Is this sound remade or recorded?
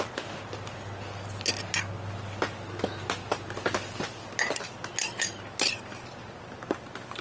recorded